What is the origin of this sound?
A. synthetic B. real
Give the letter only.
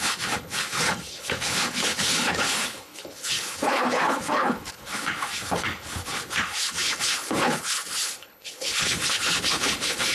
A